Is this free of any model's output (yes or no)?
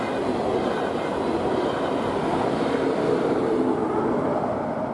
yes